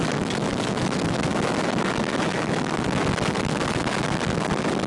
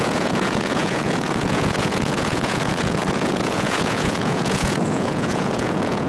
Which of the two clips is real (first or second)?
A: first